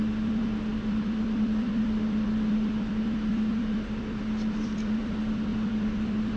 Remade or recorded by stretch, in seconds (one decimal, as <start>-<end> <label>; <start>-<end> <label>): 0.0-6.4 remade